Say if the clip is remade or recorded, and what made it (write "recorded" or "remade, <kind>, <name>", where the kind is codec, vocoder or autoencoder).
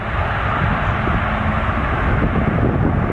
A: recorded